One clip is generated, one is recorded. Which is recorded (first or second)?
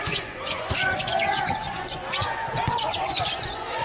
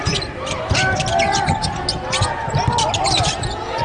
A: second